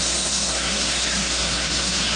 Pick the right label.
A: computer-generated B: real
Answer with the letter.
A